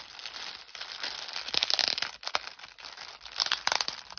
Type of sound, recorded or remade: recorded